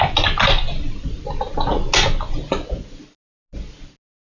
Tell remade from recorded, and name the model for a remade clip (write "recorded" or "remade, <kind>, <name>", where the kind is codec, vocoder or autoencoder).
recorded